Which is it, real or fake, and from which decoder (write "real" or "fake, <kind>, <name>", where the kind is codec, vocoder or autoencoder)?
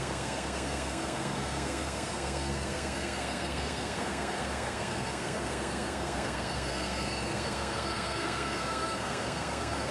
fake, codec, SNAC